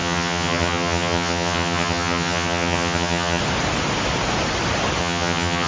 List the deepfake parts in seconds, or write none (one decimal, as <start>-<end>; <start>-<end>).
0.0-3.4; 5.0-5.7